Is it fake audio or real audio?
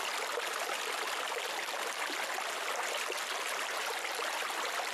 real